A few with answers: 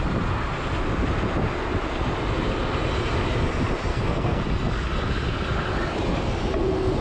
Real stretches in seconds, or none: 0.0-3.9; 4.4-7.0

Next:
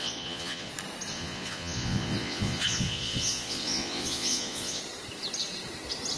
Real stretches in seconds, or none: 0.7-1.1; 4.8-6.2

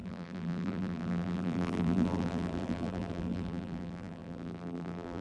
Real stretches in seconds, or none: none

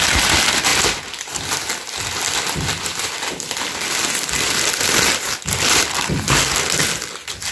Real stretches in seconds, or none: 0.0-7.5

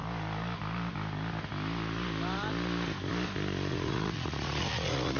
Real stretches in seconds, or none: 0.0-3.7

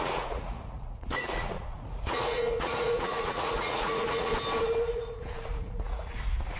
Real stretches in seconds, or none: 4.3-4.8

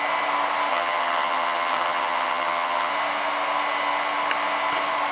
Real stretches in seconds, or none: 0.0-0.7; 2.9-5.1

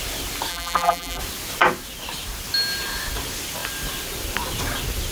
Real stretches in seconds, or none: 0.0-0.5; 1.2-5.1